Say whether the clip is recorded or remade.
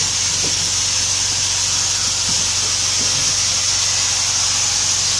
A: recorded